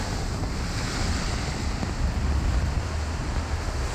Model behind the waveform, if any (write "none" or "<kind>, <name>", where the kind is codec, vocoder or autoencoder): none